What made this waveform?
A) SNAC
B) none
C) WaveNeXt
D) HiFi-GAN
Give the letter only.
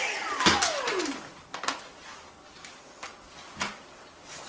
B